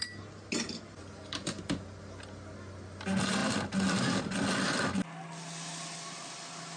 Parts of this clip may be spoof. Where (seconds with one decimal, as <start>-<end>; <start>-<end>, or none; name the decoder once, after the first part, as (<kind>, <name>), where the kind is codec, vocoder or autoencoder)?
none